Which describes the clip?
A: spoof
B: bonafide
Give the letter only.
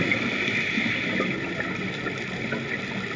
B